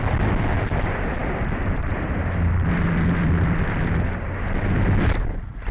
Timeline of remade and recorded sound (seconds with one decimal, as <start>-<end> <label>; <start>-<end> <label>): 0.0-5.7 recorded